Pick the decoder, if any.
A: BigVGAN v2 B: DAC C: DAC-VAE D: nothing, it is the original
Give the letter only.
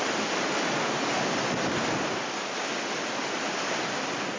D